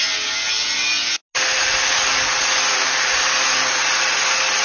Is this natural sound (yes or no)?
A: yes